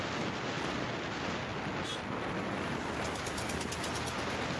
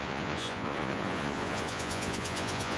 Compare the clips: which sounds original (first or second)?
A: first